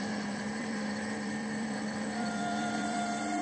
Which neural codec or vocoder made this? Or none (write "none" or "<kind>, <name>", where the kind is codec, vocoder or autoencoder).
vocoder, BigVGAN v2